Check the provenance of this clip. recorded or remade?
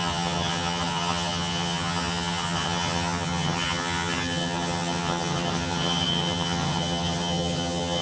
remade